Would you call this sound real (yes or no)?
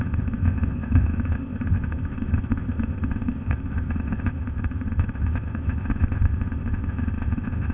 no